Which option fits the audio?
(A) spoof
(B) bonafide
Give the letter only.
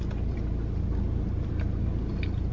B